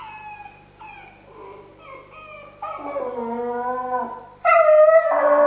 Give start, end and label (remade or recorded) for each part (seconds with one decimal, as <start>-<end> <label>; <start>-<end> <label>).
0.0-5.5 recorded

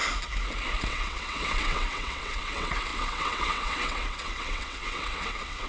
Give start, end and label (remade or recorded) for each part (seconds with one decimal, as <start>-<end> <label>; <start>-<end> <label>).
0.0-0.9 recorded; 0.9-5.7 remade

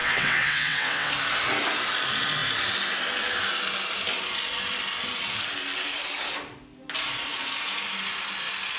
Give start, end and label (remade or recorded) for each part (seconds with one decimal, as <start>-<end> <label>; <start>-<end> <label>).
0.0-1.1 remade; 1.1-8.8 recorded